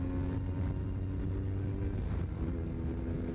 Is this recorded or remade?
recorded